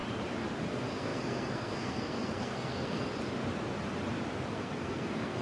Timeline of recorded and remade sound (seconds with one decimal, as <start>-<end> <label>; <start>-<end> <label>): 0.0-0.6 recorded; 0.6-3.1 remade; 3.1-4.5 recorded; 4.5-5.4 remade